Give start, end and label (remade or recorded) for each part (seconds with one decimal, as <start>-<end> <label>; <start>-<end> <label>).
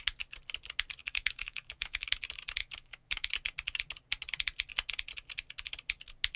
0.0-1.0 recorded; 1.0-2.1 remade; 2.1-2.6 recorded; 2.6-3.3 remade; 3.3-6.4 recorded